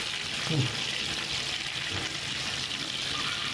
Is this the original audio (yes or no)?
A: yes